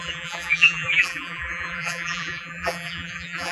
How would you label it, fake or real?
fake